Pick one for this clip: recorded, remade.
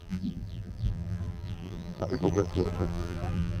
remade